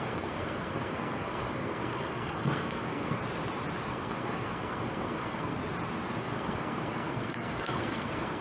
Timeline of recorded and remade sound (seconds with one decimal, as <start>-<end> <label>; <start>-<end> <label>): 0.0-3.2 remade; 3.2-3.9 recorded; 3.9-5.6 remade; 5.6-6.2 recorded; 6.2-8.4 remade